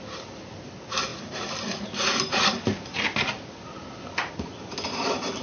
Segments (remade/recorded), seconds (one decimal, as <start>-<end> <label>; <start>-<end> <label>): 0.0-5.4 recorded